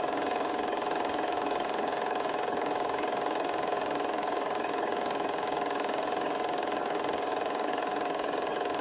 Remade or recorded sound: remade